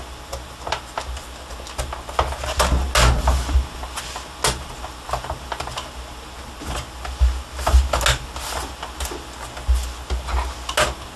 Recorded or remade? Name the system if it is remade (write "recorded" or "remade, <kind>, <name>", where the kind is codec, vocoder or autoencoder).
recorded